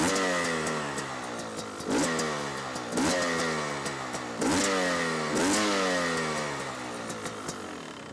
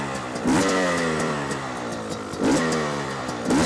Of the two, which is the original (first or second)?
first